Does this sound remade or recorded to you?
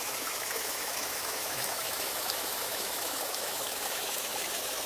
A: remade